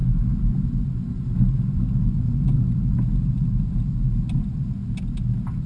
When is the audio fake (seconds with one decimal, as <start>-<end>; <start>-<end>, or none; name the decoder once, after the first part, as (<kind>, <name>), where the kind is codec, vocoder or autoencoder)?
none